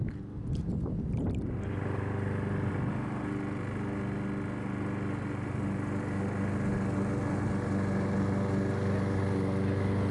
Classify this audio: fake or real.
real